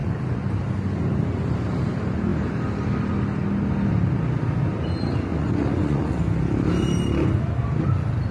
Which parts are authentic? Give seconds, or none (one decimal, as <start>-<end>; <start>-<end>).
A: 0.5-5.3; 6.2-8.3